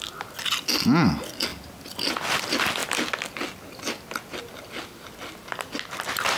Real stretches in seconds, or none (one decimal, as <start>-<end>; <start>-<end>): 0.0-6.4

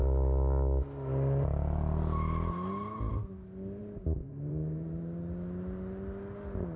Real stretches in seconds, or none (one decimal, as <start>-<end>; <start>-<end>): 0.0-3.8; 5.0-6.8

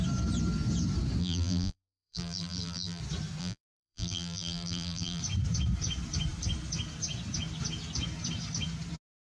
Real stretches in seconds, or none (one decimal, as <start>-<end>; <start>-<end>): 0.0-1.2; 3.0-3.4; 5.2-9.3

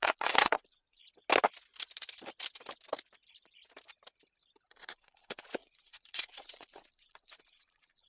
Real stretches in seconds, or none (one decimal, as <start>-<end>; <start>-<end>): 1.0-4.7